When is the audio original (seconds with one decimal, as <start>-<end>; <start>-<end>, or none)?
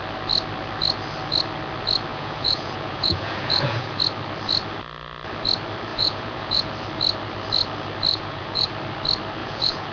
0.0-2.1; 4.0-5.9; 6.7-8.1; 8.7-9.4